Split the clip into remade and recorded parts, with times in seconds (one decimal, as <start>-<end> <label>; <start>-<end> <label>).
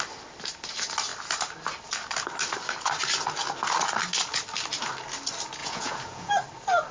0.0-5.6 recorded; 5.6-6.3 remade; 6.3-6.9 recorded